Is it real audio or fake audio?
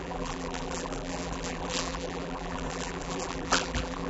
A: fake